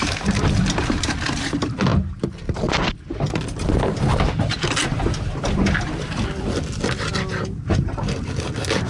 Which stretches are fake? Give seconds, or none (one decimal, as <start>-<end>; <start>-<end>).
none